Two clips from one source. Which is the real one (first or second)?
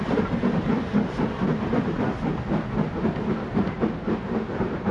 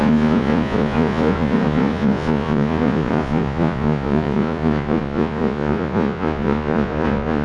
first